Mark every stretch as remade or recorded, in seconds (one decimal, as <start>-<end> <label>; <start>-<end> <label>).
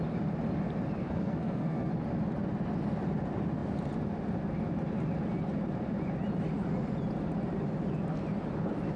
0.0-1.0 recorded; 1.0-1.9 remade; 1.9-9.0 recorded